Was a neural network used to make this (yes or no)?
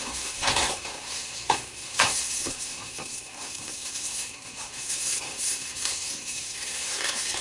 yes